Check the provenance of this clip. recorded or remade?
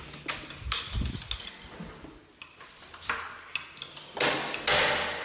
recorded